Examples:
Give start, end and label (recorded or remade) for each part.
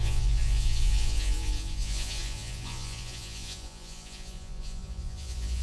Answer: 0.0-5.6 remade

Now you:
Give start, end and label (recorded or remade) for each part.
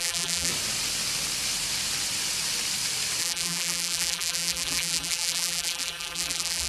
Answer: 0.0-0.5 remade; 0.5-3.2 recorded; 3.2-6.7 remade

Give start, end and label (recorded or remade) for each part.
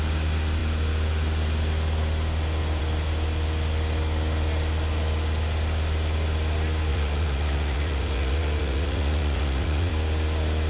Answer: 0.0-6.9 recorded; 6.9-9.9 remade; 9.9-10.7 recorded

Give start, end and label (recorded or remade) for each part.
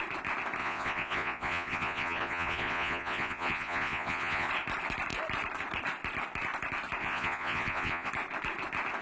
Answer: 0.0-0.6 recorded; 0.6-4.5 remade; 4.5-7.0 recorded; 7.0-8.1 remade; 8.1-9.0 recorded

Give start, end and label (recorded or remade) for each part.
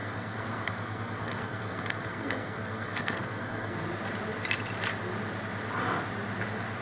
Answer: 0.0-3.8 remade; 3.8-6.8 recorded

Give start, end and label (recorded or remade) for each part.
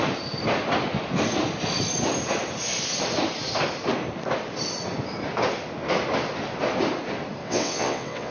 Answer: 0.0-7.4 recorded; 7.4-8.3 remade